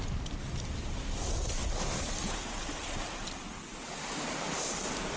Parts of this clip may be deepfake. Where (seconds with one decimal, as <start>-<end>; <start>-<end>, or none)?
none